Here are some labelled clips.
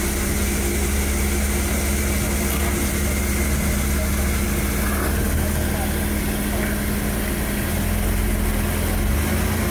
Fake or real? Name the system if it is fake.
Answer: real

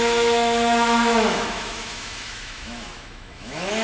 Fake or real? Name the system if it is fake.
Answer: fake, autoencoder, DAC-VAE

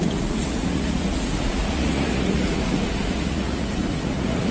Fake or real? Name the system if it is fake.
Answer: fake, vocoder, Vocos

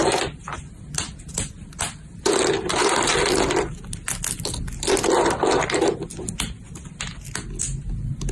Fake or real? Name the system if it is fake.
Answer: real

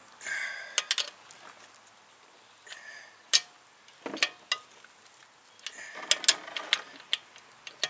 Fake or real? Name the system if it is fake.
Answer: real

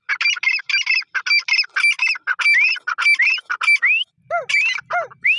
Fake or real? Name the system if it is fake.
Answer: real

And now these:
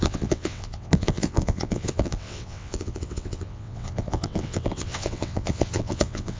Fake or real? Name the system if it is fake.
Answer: fake, vocoder, WaveNeXt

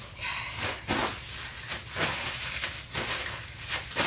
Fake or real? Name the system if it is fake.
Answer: real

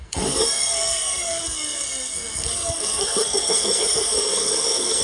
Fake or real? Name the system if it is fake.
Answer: fake, codec, SNAC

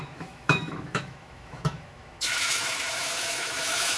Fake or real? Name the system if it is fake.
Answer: fake, autoencoder, DAC-VAE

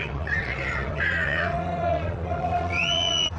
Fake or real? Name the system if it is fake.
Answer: fake, vocoder, Vocos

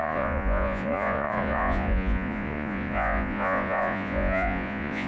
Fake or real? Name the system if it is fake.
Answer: fake, vocoder, Vocos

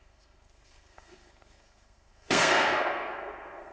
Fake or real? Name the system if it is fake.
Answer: fake, codec, SNAC